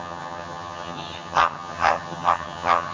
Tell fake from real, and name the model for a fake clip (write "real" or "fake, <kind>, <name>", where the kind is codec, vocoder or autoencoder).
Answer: fake, vocoder, HiFi-GAN